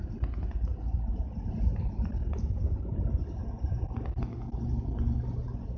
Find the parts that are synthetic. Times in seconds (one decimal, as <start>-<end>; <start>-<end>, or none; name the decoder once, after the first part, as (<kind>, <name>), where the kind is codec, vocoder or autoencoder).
none